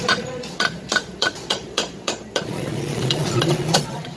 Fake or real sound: fake